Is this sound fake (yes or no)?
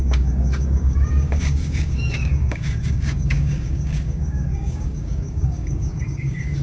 yes